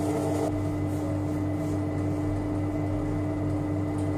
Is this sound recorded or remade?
recorded